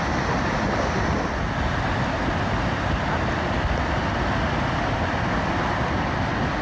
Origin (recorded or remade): recorded